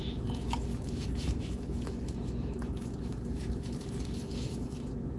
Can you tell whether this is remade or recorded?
remade